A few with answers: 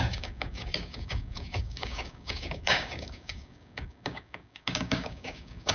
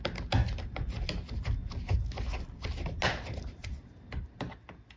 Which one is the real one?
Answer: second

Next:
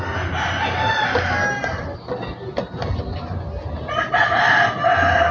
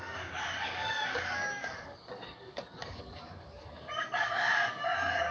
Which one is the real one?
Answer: first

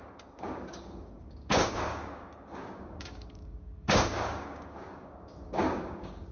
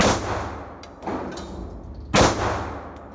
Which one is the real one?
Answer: second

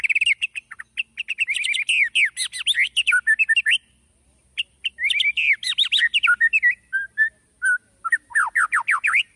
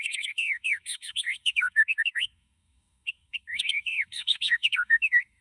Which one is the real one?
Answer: first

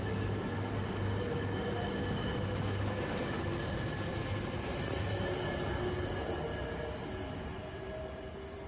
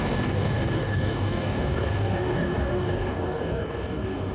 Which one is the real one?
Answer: first